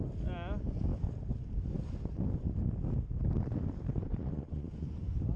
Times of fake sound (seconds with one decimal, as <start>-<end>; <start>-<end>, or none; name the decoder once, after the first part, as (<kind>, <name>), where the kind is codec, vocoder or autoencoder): 3.9-4.9 (vocoder, Vocos)